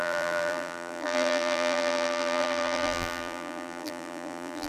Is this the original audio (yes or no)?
no